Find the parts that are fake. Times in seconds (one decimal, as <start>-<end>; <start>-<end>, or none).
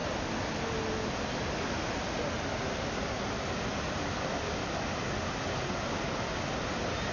none